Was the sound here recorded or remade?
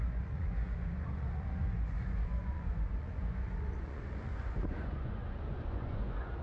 remade